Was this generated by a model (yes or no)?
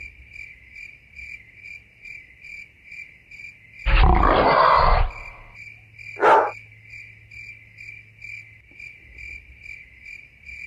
no